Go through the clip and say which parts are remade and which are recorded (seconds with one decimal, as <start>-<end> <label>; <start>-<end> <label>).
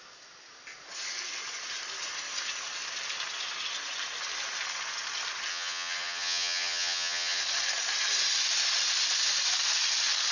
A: 0.0-5.5 recorded; 5.5-7.4 remade; 7.4-10.3 recorded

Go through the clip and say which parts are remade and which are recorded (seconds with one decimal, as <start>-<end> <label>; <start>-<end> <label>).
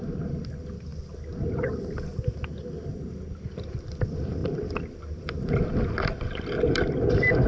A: 0.0-0.9 remade; 0.9-3.7 recorded; 3.7-7.5 remade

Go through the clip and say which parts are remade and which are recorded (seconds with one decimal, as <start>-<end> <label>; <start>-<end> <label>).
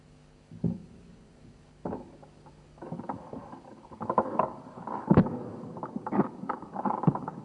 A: 0.0-7.4 remade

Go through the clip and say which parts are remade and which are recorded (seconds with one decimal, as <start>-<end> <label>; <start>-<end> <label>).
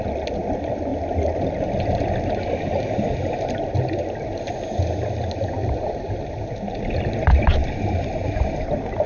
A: 0.0-9.1 recorded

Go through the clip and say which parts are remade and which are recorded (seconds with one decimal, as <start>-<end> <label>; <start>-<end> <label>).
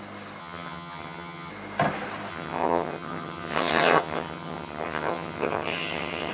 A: 0.0-0.4 recorded; 0.4-1.5 remade; 1.5-2.3 recorded; 2.3-6.3 remade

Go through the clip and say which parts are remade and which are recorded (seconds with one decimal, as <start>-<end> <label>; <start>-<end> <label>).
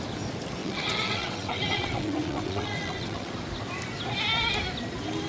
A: 0.0-0.6 recorded; 0.6-3.3 remade; 3.3-5.3 recorded